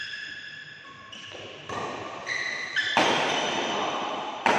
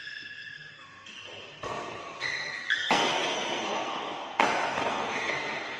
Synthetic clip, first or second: second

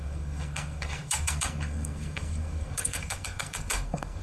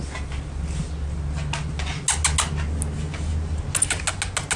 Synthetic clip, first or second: first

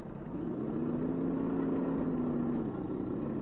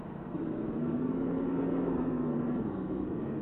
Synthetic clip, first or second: second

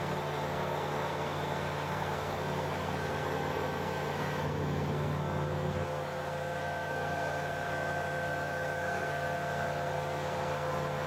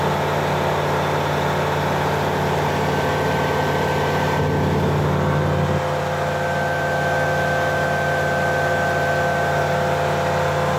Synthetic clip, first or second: first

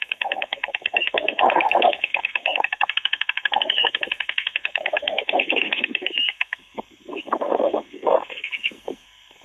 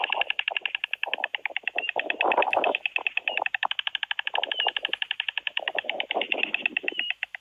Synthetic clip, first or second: first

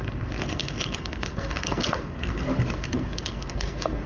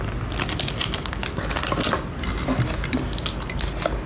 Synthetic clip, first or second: first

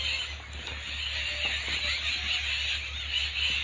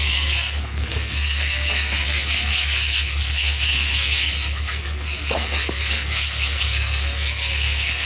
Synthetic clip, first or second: second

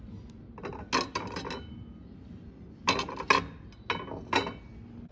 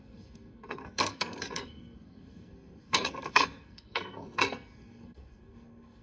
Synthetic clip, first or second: second